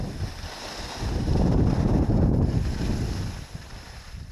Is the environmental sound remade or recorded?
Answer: recorded